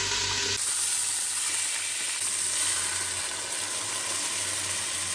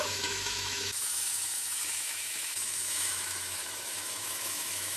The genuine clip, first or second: first